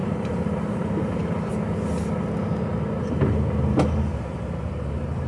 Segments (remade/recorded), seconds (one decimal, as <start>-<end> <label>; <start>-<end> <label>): 0.0-1.5 remade; 1.5-4.7 recorded; 4.7-5.3 remade